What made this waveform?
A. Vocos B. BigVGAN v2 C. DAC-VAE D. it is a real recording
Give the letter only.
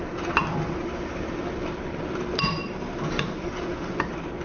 B